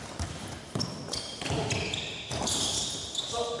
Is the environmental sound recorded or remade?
recorded